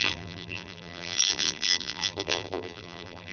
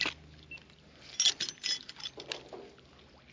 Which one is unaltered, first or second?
second